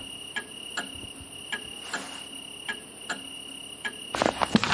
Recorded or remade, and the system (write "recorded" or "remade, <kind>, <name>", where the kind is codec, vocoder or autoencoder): recorded